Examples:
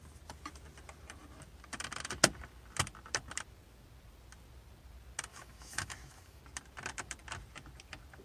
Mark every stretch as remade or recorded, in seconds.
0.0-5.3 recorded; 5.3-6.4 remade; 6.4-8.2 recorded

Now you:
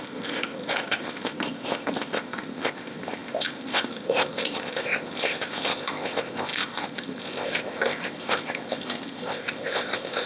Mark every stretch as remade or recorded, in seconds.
0.0-10.3 remade

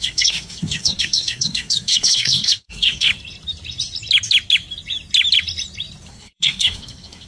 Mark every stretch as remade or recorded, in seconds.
0.0-3.1 remade; 3.1-6.1 recorded; 6.1-7.3 remade

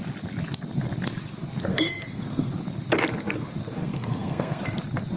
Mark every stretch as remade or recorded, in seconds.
0.0-1.7 recorded; 1.7-2.5 remade; 2.5-3.8 recorded; 3.8-4.6 remade; 4.6-5.2 recorded

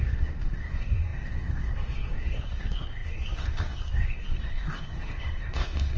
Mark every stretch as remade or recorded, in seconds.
0.0-6.0 remade

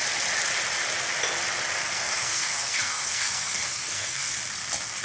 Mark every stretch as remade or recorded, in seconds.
0.0-1.8 recorded; 1.8-4.3 remade; 4.3-5.0 recorded

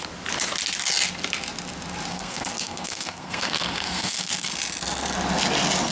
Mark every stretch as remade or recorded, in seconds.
0.0-2.1 recorded; 2.1-4.5 remade; 4.5-5.9 recorded